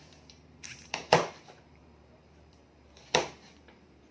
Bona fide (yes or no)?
no